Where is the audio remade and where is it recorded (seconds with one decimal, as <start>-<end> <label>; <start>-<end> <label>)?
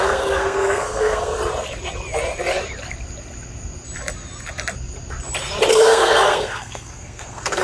0.0-1.4 remade; 1.4-5.7 recorded; 5.7-7.6 remade